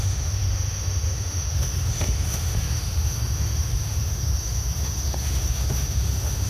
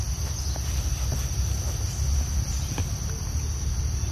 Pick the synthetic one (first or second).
first